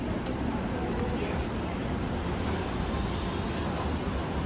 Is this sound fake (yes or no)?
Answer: no